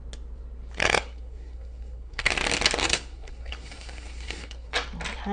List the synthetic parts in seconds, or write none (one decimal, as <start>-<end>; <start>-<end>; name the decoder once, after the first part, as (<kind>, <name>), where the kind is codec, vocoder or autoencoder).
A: 0.8-2.3 (codec, SNAC); 2.8-4.7